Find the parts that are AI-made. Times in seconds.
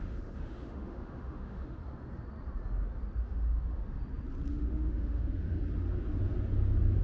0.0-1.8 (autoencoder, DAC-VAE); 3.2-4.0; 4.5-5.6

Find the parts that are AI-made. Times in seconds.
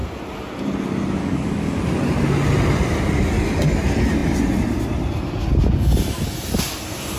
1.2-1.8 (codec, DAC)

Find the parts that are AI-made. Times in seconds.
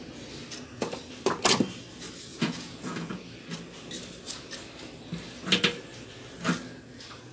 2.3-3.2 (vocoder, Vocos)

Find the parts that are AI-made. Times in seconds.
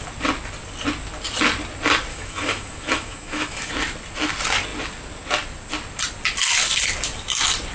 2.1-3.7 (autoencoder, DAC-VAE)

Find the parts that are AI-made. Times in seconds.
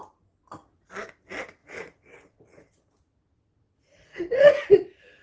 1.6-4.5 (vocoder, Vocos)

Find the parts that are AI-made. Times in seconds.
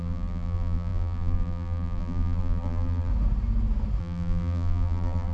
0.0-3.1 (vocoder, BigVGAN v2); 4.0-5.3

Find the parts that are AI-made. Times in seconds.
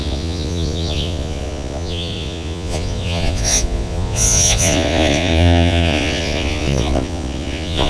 0.0-7.9 (vocoder, Vocos)